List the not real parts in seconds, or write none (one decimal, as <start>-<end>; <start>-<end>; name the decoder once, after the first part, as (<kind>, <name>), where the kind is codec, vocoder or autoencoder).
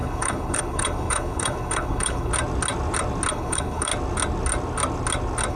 0.0-2.3 (codec, HILCodec); 3.3-3.9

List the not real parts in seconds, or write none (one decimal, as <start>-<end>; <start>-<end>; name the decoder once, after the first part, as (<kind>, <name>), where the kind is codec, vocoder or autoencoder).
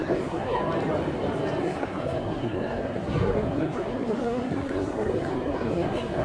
0.0-0.6 (codec, SNAC); 1.6-6.2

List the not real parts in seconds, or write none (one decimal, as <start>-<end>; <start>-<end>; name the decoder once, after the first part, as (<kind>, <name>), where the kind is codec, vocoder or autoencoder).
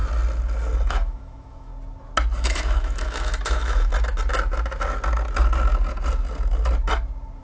0.9-1.7 (autoencoder, DAC-VAE); 2.4-3.9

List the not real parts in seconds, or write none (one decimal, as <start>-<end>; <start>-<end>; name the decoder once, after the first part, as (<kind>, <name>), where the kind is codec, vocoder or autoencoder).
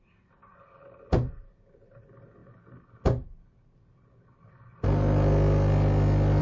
none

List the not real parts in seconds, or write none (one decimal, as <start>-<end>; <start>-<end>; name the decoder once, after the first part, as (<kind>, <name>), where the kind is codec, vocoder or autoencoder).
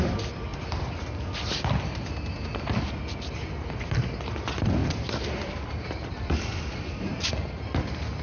0.5-1.2 (vocoder, BigVGAN v2); 4.8-7.7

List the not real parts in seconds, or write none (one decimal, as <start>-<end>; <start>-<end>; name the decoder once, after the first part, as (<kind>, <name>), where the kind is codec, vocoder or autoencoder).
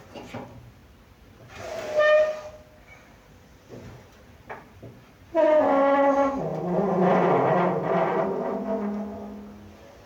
6.5-7.9 (vocoder, BigVGAN v2)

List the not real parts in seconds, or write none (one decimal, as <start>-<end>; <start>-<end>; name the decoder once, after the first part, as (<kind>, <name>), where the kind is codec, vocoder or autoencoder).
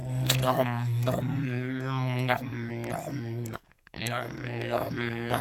0.0-2.7 (codec, SNAC); 3.1-5.4